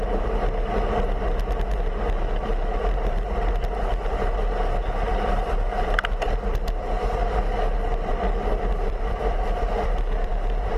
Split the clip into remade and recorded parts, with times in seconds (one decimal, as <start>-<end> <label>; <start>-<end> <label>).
0.0-5.1 recorded; 5.1-6.3 remade; 6.3-8.1 recorded; 8.1-10.3 remade; 10.3-10.8 recorded